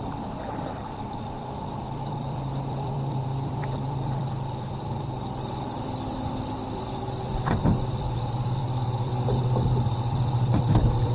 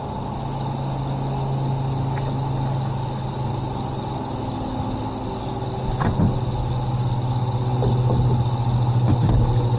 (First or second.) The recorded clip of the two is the second